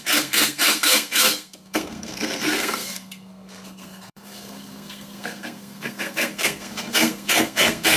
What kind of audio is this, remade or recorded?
remade